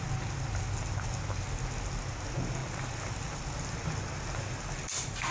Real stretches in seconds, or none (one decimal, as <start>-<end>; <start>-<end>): 0.0-5.3

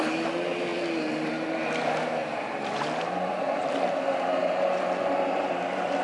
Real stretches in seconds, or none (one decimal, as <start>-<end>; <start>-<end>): none

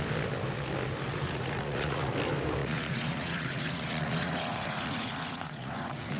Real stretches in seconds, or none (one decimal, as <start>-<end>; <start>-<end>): 0.0-1.1; 2.1-2.6

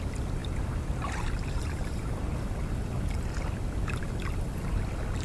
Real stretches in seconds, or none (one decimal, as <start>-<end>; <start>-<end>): 0.0-0.4; 2.3-5.2

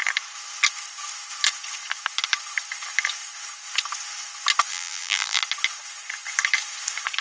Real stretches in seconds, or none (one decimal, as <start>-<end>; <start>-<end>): 0.0-4.7; 5.4-7.2